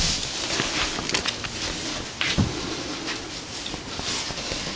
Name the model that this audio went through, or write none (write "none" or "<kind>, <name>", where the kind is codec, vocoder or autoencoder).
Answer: none